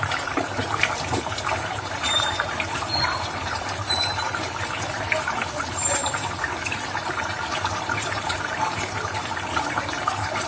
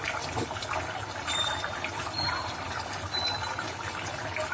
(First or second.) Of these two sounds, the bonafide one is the second